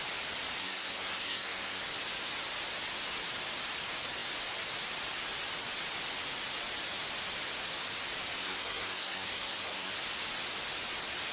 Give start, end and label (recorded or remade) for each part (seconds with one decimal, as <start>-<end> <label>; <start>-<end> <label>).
0.0-0.6 recorded; 0.6-1.8 remade; 1.8-8.4 recorded; 8.4-9.9 remade; 9.9-11.3 recorded